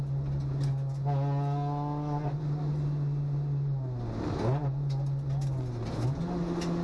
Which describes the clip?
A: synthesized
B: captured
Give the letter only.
B